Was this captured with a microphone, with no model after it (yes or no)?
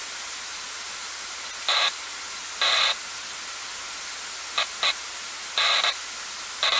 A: yes